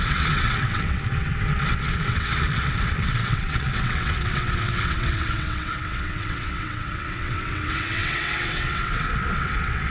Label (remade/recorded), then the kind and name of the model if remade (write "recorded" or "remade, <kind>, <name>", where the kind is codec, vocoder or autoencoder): remade, vocoder, WaveNeXt